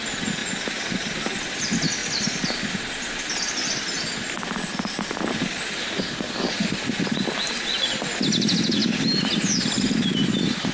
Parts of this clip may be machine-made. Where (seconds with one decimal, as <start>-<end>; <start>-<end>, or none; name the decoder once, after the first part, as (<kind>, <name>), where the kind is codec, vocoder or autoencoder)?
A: none